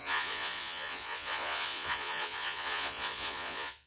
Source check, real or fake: fake